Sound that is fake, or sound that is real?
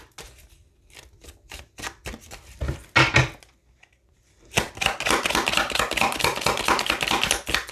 real